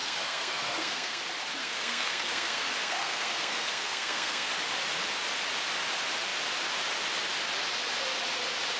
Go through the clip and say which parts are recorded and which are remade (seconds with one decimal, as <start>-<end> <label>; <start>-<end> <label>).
0.0-1.2 remade; 1.2-1.6 recorded; 1.6-4.5 remade; 4.5-8.8 recorded